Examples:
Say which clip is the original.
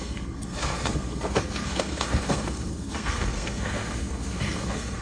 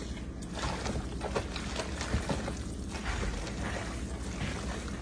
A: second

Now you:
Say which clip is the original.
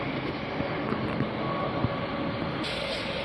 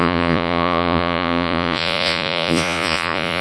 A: first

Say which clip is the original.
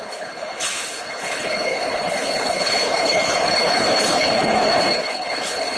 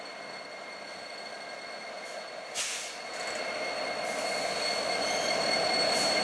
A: second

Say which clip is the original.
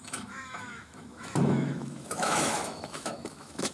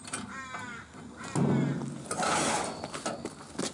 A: second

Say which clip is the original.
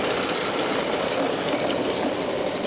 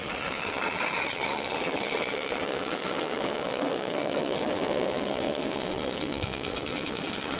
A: first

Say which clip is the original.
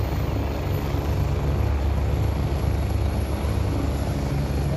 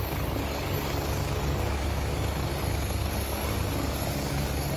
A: first